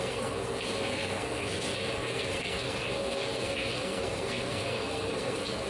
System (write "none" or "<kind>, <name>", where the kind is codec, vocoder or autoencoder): codec, SNAC